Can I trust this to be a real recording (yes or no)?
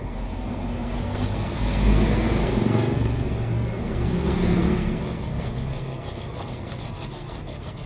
no